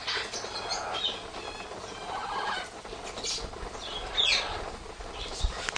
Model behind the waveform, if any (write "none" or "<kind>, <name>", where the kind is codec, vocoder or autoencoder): none